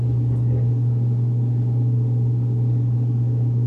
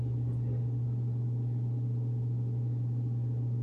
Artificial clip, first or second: first